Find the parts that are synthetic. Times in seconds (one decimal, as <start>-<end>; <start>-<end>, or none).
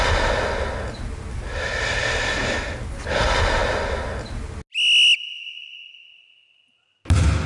none